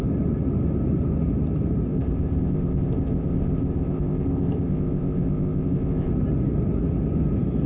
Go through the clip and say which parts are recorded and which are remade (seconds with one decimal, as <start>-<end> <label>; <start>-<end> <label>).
0.0-1.9 recorded; 1.9-6.1 remade; 6.1-7.7 recorded